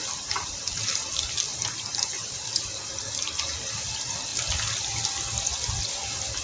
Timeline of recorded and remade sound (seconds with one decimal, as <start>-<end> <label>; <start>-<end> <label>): 0.0-1.1 remade; 1.1-1.5 recorded; 1.5-3.9 remade; 3.9-6.4 recorded